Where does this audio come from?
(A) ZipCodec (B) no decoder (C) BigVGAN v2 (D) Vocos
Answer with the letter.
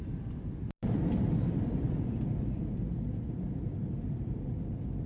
C